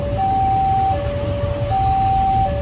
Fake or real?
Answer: real